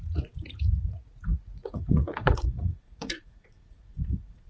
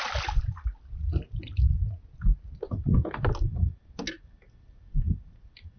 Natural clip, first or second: second